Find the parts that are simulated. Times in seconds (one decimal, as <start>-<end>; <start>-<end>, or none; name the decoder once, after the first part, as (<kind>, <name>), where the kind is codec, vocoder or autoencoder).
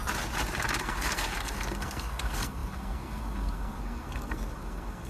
0.8-5.1 (codec, SNAC)